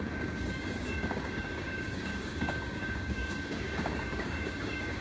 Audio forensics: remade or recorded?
remade